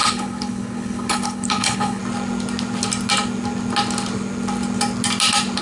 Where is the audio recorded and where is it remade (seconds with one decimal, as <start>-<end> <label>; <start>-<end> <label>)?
0.0-2.0 remade; 2.0-5.6 recorded